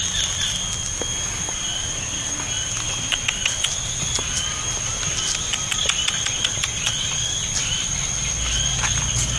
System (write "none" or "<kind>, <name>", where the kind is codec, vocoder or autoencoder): none